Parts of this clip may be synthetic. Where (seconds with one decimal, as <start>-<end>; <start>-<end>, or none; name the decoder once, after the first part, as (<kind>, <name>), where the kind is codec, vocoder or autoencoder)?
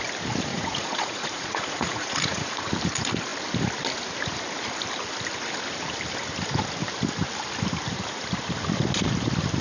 0.5-2.7 (vocoder, Vocos)